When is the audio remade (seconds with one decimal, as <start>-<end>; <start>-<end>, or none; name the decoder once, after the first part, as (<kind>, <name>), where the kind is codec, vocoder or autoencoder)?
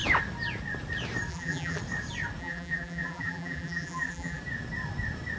1.3-1.8 (vocoder, BigVGAN v2); 2.4-4.4